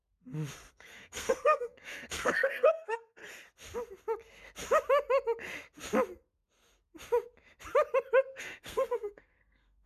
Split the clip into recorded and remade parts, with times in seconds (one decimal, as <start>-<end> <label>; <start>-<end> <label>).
0.0-0.7 recorded; 0.7-3.2 remade; 3.2-8.4 recorded; 8.4-9.9 remade